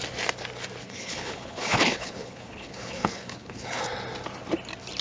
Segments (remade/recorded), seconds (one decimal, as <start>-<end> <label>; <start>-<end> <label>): 0.0-0.8 recorded; 0.8-3.8 remade; 3.8-5.0 recorded